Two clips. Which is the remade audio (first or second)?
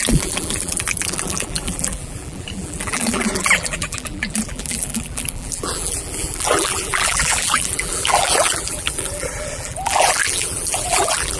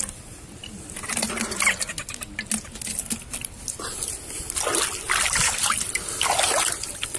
first